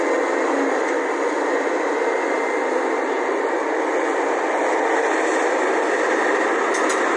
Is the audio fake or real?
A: real